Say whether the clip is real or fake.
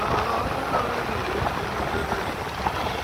real